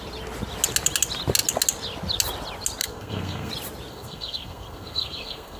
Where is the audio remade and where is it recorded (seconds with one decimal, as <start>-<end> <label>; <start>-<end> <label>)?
0.0-2.8 recorded; 2.8-3.5 remade; 3.5-3.9 recorded; 3.9-5.6 remade